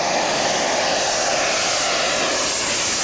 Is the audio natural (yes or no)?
yes